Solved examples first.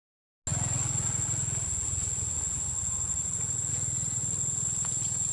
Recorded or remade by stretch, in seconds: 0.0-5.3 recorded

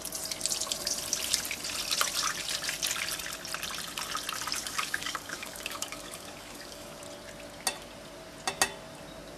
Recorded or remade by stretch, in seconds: 0.0-4.6 recorded; 4.6-7.0 remade; 7.0-9.4 recorded

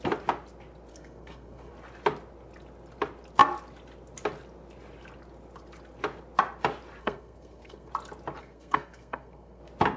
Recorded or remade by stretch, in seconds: 0.0-0.9 recorded; 0.9-1.7 remade; 1.7-7.0 recorded; 7.0-7.9 remade; 7.9-8.4 recorded; 8.4-9.6 remade; 9.6-10.0 recorded

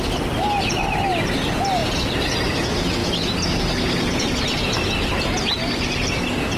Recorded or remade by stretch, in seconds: 0.0-1.8 recorded; 1.8-2.3 remade; 2.3-3.0 recorded; 3.0-5.1 remade; 5.1-6.6 recorded

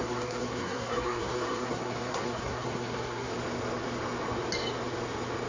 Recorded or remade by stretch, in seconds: 0.0-3.3 remade; 3.3-5.5 recorded

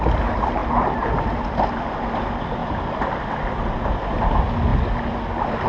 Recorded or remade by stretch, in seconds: 0.0-0.6 recorded; 0.6-1.3 remade; 1.3-2.6 recorded; 2.6-4.3 remade; 4.3-5.7 recorded